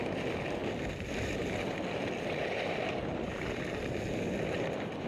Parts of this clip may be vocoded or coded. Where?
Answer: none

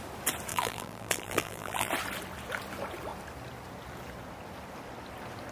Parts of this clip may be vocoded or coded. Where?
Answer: 0.5-1.9

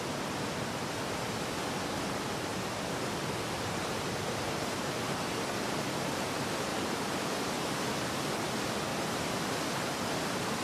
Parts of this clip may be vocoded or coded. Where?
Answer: 2.5-6.2; 6.7-7.8

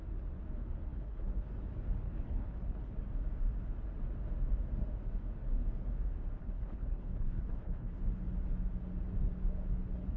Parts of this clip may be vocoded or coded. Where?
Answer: 0.9-1.5; 2.0-3.0; 6.4-8.0

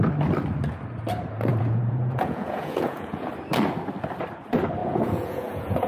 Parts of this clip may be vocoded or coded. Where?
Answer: 1.5-3.3; 4.8-5.9

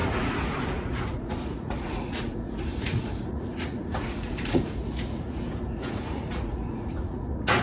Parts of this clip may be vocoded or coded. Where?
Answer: 0.0-7.6

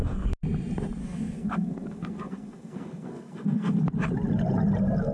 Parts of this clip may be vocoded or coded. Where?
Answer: 1.0-3.8

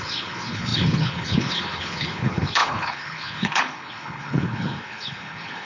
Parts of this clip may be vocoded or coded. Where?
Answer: 0.0-5.6